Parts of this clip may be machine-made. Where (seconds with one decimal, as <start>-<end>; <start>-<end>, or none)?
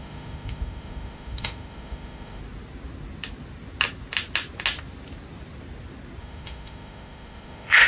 0.0-2.4; 6.2-7.9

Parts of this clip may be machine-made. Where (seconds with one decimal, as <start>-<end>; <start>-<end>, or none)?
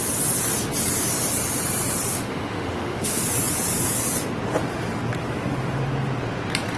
2.1-3.2